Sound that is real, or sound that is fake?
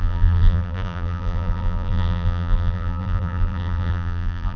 fake